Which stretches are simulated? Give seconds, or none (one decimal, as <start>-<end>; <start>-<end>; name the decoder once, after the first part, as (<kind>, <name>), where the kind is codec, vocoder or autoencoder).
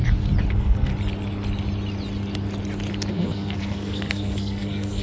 0.5-0.9 (codec, SNAC); 3.1-5.0